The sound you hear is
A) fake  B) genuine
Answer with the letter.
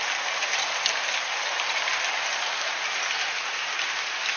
B